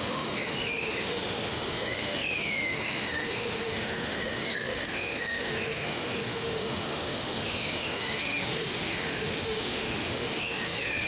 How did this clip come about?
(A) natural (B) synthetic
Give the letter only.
B